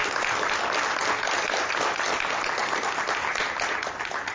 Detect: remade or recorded recorded